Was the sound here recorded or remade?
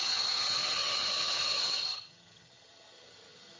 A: remade